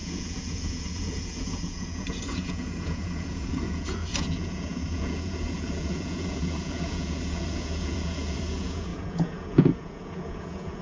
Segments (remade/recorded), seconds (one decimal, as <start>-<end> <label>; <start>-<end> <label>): 0.0-10.8 remade